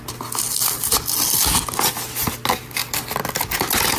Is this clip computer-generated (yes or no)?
no